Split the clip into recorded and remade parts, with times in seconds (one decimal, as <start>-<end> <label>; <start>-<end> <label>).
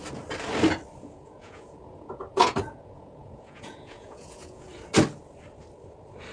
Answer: 0.0-1.0 recorded; 1.0-4.7 remade; 4.7-6.3 recorded